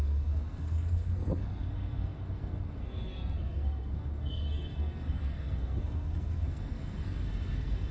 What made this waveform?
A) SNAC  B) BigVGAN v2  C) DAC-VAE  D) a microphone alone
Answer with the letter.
A